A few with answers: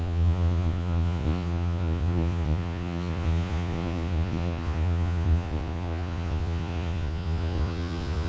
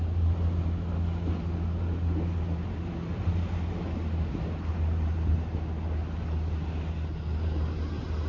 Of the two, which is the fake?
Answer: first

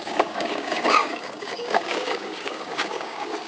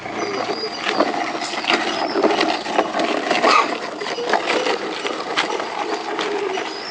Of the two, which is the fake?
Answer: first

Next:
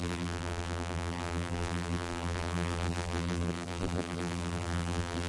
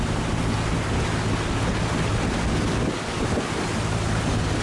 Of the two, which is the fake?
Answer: first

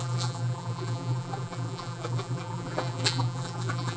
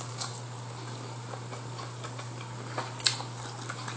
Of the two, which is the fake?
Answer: first